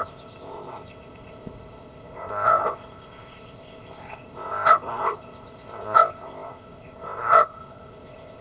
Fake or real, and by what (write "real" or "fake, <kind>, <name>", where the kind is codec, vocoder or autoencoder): fake, codec, ZipCodec